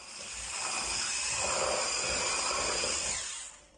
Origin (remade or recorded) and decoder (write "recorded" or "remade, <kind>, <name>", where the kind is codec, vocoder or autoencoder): recorded